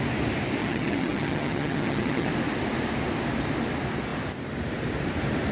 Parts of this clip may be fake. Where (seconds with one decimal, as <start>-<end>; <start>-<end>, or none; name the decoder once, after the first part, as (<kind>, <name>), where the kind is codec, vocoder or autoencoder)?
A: 0.6-2.3 (vocoder, HiFi-GAN)